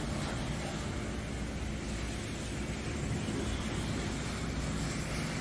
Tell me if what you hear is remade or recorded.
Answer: recorded